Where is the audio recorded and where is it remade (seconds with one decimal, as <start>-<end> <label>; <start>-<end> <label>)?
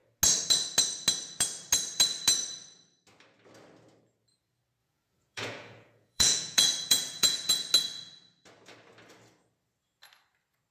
0.0-4.8 recorded; 4.8-7.5 remade; 7.5-10.7 recorded